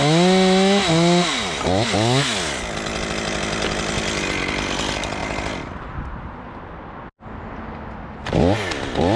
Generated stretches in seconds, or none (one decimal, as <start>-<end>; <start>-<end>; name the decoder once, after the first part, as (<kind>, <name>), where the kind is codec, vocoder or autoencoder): none